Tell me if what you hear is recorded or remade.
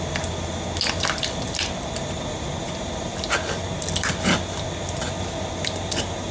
recorded